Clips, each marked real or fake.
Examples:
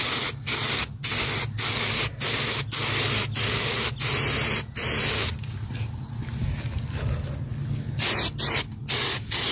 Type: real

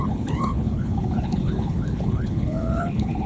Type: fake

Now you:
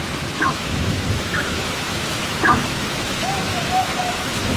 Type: fake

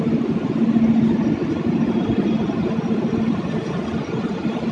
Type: real